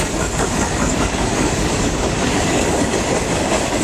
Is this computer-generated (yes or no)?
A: yes